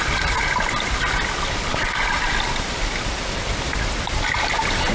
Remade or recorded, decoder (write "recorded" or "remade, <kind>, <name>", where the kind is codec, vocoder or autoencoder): recorded